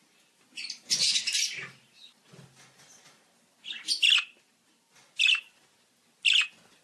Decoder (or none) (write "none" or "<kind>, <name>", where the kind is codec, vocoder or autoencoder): none